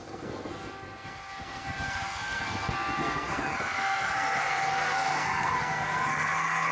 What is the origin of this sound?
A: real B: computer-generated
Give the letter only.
B